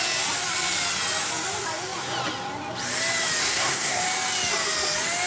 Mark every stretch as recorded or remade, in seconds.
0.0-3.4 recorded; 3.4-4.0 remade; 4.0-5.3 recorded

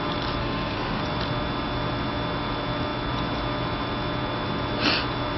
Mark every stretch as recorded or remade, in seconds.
0.0-0.4 recorded; 0.4-1.0 remade; 1.0-5.4 recorded

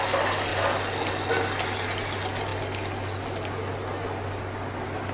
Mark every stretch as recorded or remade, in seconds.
0.0-5.1 recorded

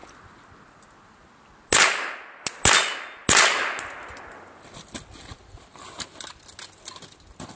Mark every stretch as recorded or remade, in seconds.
0.0-7.6 recorded